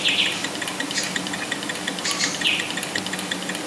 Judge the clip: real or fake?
real